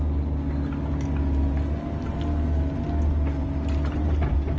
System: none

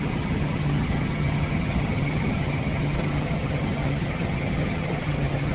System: vocoder, HiFi-GAN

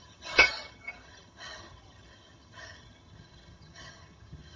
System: vocoder, HiFi-GAN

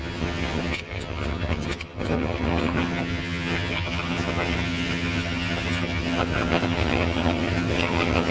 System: vocoder, HiFi-GAN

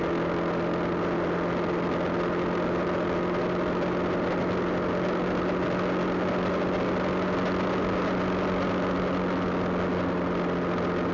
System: none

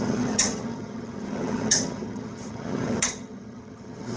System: vocoder, HiFi-GAN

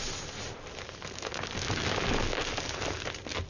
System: none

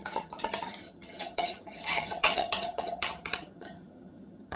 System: vocoder, HiFi-GAN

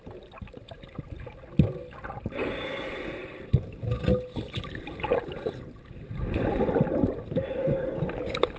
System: none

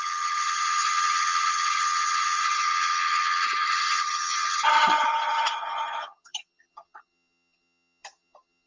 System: vocoder, HiFi-GAN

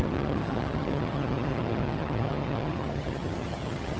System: vocoder, HiFi-GAN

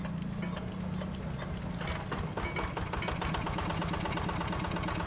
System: none